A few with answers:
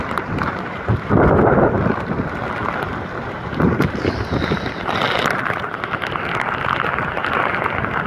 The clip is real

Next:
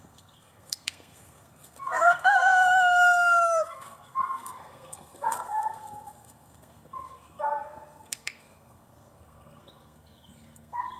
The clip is fake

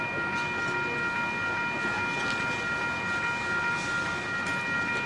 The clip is real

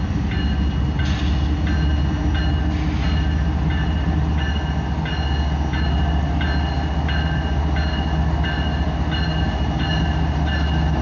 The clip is real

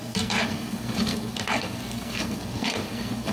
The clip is fake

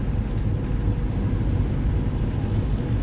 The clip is real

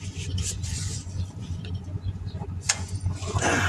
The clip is fake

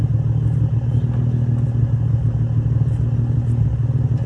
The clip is real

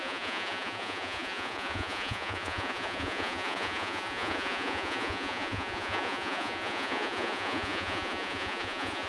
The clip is fake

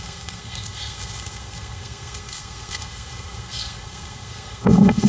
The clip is fake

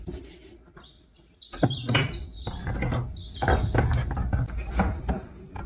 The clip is real